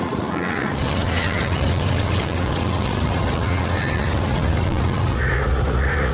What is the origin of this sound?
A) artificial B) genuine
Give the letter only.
A